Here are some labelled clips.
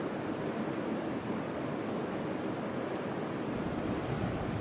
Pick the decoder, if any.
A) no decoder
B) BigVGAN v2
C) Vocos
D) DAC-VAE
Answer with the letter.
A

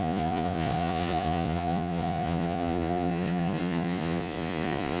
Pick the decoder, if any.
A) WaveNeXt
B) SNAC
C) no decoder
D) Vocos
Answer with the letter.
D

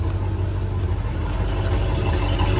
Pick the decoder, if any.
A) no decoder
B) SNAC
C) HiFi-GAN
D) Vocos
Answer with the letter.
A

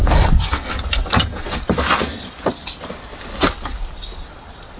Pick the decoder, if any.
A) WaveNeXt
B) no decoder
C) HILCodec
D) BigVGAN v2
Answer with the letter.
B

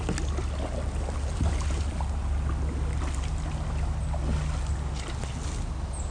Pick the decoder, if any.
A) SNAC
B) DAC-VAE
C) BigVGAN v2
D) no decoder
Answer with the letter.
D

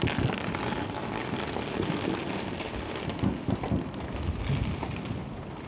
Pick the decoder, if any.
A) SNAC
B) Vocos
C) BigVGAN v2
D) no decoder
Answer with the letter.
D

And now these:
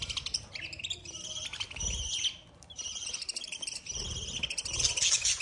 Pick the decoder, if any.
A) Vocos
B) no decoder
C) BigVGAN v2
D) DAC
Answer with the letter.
B